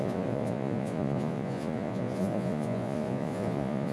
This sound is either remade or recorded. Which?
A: remade